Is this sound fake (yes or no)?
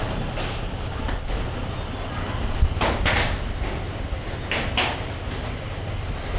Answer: no